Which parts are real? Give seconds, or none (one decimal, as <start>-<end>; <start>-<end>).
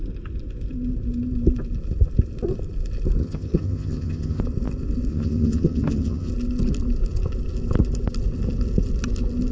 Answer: 0.0-3.2; 4.4-5.1; 6.3-9.5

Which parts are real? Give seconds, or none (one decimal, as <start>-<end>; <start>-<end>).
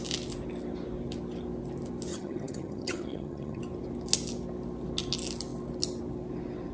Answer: 0.0-2.1; 3.6-6.7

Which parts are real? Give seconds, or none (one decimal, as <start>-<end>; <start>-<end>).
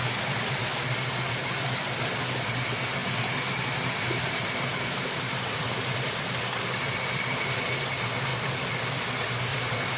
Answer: 0.0-3.0; 7.0-8.3; 9.0-9.5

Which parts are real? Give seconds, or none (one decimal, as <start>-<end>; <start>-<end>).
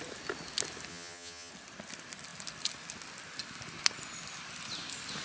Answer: 0.0-0.9; 1.5-5.2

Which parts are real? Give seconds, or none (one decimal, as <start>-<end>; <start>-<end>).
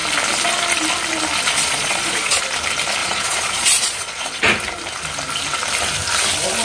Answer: 0.0-1.6; 2.4-3.0; 4.4-6.6